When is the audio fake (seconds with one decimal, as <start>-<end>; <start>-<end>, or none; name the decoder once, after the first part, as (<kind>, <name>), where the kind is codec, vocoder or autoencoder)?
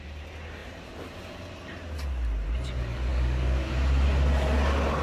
3.1-3.7 (codec, DAC)